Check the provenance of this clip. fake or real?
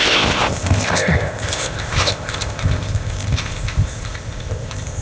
fake